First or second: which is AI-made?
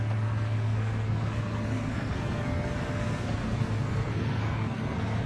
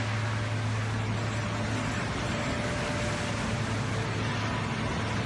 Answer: first